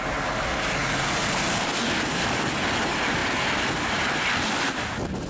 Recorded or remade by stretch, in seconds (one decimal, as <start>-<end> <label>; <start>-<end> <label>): 0.0-5.3 recorded